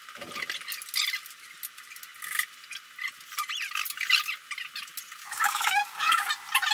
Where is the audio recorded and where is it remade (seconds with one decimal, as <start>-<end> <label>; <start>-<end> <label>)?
0.0-5.2 recorded; 5.2-6.3 remade; 6.3-6.7 recorded